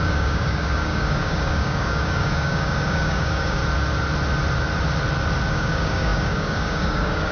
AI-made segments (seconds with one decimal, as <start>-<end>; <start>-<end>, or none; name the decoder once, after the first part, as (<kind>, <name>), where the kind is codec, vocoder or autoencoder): 0.0-3.6 (codec, DAC); 5.5-7.3